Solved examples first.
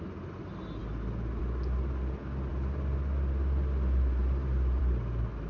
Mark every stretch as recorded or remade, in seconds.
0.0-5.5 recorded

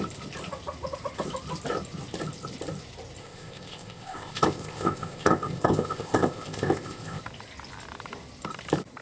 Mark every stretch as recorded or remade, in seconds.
0.0-3.2 recorded; 3.2-7.2 remade; 7.2-9.0 recorded